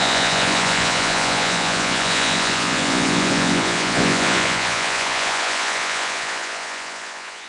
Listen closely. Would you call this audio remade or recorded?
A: remade